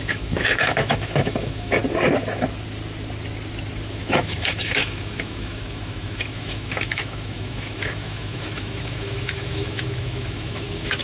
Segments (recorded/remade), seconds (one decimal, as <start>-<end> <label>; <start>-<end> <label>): 0.0-1.8 remade; 1.8-3.9 recorded; 3.9-11.0 remade